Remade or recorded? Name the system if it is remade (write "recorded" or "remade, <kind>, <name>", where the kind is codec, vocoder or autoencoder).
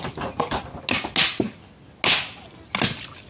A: recorded